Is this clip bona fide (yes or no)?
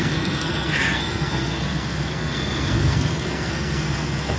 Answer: no